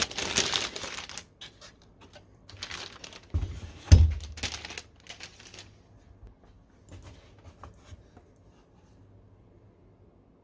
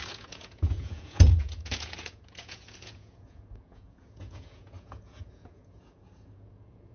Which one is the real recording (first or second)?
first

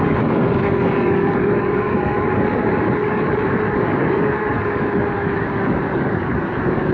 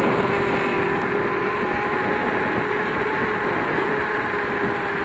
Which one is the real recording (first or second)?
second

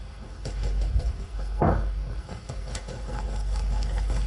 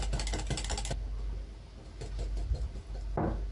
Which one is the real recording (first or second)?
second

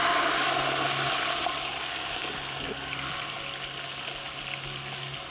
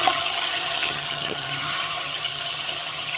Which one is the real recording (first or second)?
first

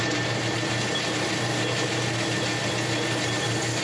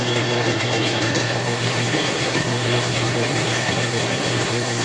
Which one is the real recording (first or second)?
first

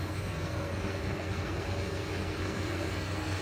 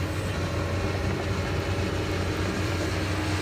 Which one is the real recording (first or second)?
second